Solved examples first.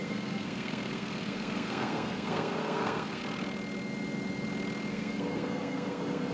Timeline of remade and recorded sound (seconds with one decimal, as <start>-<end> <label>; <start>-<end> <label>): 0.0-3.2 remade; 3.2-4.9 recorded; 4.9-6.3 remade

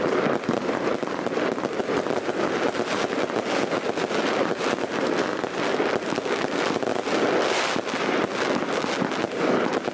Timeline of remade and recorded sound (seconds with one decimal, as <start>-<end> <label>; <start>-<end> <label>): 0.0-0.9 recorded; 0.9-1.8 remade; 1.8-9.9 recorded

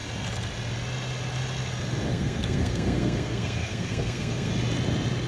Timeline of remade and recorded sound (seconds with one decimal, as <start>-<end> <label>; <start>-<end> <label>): 0.0-2.1 recorded; 2.1-4.5 remade; 4.5-5.3 recorded

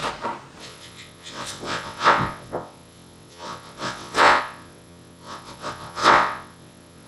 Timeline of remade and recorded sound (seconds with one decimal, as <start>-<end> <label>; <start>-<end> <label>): 0.0-0.6 recorded; 0.6-7.1 remade